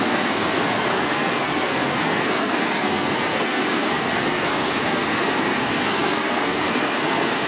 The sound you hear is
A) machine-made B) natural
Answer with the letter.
A